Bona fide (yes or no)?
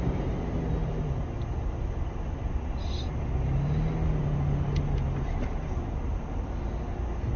yes